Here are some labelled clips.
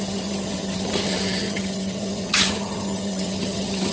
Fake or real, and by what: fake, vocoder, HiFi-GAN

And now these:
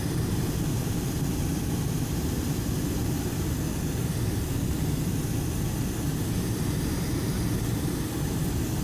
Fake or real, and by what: real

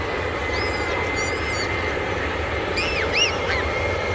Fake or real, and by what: real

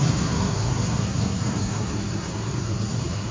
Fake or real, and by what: fake, codec, SNAC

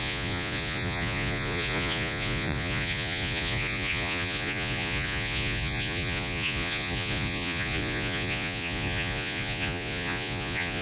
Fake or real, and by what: fake, vocoder, Vocos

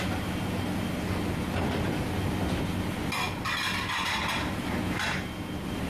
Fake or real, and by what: real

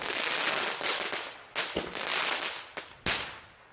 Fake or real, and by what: real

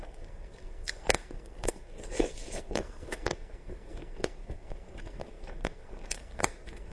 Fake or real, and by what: fake, codec, SNAC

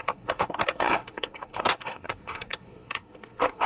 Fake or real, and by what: fake, codec, SNAC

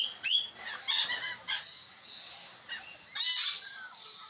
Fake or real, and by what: real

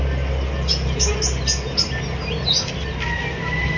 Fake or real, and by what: real